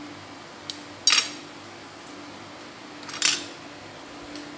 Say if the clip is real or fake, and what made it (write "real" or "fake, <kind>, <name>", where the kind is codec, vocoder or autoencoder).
real